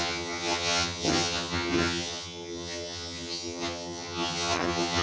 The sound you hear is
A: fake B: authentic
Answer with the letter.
A